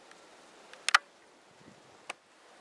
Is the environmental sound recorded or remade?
recorded